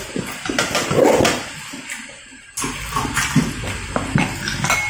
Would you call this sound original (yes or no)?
yes